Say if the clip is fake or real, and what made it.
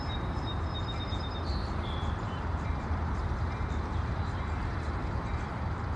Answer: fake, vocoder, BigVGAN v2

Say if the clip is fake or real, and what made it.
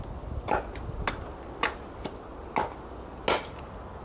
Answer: real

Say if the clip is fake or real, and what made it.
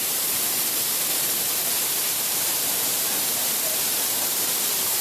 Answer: fake, vocoder, BigVGAN v2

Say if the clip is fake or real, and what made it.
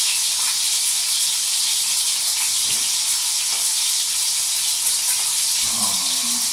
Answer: real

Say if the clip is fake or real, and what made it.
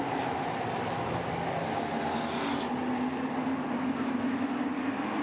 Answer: real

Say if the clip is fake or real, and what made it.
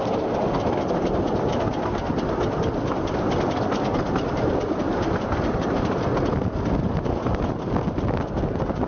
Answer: real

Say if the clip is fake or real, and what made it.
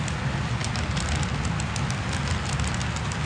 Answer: real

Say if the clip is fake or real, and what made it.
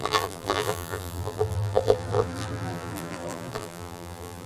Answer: fake, vocoder, BigVGAN v2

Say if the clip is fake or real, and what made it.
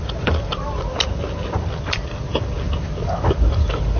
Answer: real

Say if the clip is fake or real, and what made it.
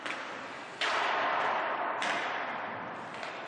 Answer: fake, vocoder, BigVGAN v2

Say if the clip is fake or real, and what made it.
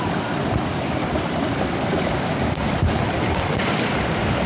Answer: fake, vocoder, BigVGAN v2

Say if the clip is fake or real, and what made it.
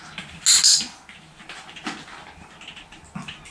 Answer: real